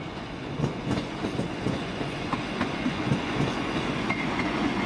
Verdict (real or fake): fake